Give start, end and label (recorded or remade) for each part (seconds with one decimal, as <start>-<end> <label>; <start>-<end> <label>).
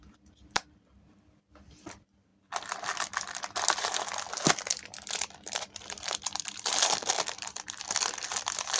0.0-8.8 remade